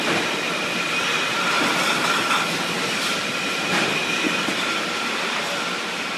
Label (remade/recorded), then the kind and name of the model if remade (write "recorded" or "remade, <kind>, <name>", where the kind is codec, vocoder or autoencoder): recorded